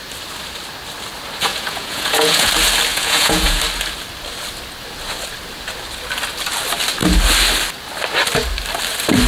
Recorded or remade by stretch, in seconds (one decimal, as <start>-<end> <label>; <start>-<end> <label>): 0.0-1.5 recorded; 1.5-2.5 remade; 2.5-2.9 recorded; 2.9-3.6 remade; 3.6-9.3 recorded